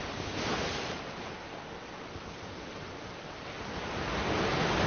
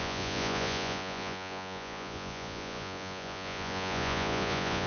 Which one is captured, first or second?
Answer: first